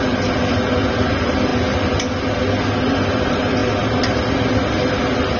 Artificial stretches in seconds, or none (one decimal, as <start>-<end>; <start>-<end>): none